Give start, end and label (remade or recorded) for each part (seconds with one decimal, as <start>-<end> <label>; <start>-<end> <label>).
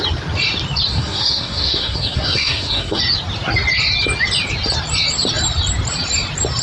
0.0-0.9 recorded; 0.9-3.0 remade; 3.0-6.6 recorded